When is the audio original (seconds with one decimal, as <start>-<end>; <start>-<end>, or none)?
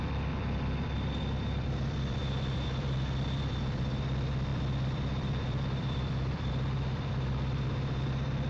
none